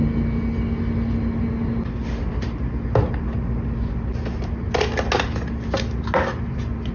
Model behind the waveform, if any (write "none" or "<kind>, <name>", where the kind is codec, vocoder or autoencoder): none